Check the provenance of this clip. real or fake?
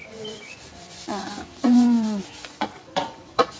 fake